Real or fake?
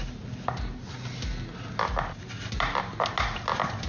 real